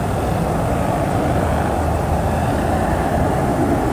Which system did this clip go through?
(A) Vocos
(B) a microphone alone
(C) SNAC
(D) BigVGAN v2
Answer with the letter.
B